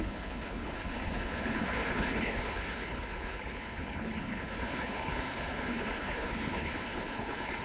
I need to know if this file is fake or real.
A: fake